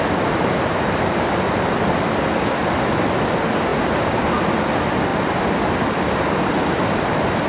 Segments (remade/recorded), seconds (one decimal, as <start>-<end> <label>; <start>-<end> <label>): 0.0-7.5 recorded